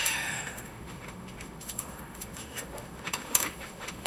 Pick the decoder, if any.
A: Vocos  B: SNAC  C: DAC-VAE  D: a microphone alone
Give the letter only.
C